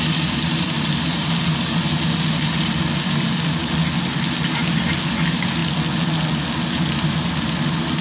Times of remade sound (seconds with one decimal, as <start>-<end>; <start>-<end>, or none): none